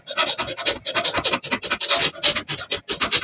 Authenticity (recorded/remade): recorded